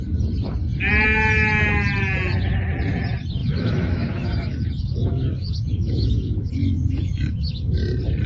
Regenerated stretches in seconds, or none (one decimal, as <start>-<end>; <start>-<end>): 3.4-7.8

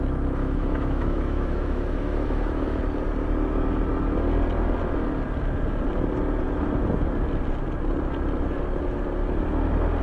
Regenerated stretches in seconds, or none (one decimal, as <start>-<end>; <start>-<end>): 0.4-2.8

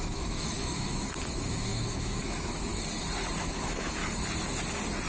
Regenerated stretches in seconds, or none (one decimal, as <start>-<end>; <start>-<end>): 0.0-2.7; 3.4-4.0

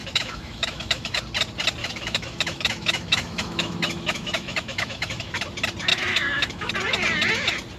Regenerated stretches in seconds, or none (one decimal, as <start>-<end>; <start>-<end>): 0.0-1.2; 1.8-5.4; 5.9-6.7

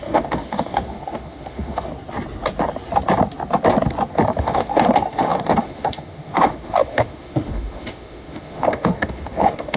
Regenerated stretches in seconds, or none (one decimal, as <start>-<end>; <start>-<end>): 0.0-1.9; 4.4-9.8

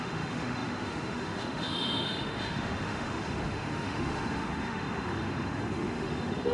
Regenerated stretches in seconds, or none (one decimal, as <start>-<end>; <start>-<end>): 0.0-6.5

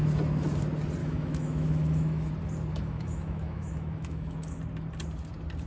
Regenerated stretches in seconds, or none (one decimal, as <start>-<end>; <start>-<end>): 1.0-2.3; 2.7-4.6